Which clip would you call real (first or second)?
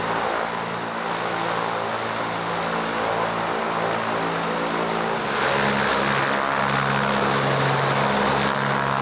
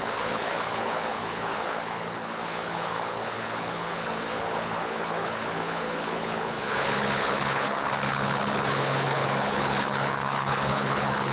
first